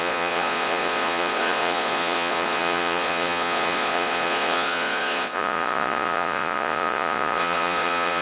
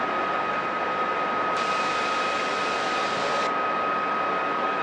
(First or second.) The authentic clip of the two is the second